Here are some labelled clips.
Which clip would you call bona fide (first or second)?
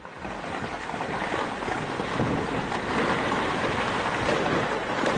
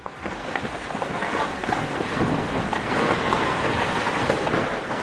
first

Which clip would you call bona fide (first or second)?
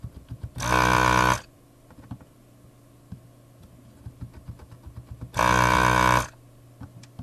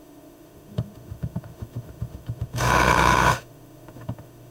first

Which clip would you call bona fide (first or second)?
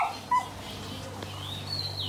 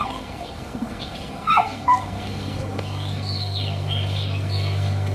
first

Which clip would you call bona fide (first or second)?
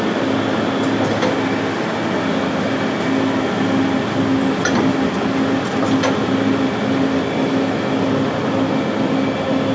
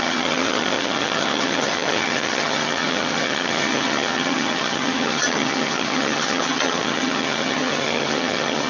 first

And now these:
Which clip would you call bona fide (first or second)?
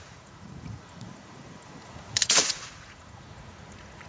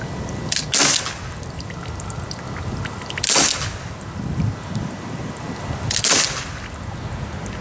second